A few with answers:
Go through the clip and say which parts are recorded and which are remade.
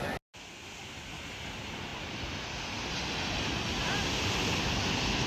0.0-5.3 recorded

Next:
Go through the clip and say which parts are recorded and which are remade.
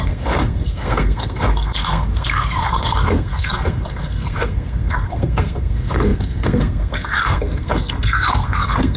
0.0-9.0 remade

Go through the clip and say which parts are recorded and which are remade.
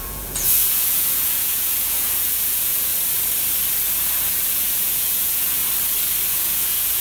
0.0-2.9 remade; 2.9-4.5 recorded; 4.5-5.6 remade; 5.6-6.3 recorded; 6.3-7.0 remade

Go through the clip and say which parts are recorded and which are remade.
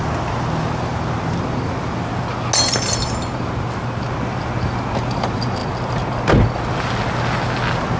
0.0-8.0 recorded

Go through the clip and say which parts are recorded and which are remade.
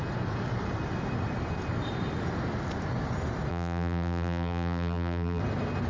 0.0-3.5 recorded; 3.5-5.4 remade; 5.4-5.9 recorded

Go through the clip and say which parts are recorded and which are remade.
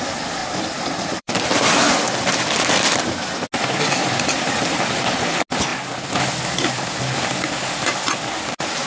0.0-0.4 recorded; 0.4-3.0 remade; 3.0-8.9 recorded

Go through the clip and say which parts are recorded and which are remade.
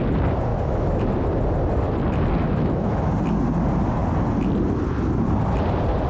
0.0-0.5 recorded; 0.5-1.0 remade; 1.0-2.4 recorded; 2.4-3.1 remade; 3.1-6.1 recorded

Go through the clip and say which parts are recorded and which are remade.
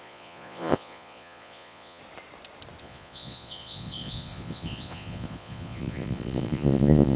0.0-2.0 remade; 2.0-2.8 recorded; 2.8-7.2 remade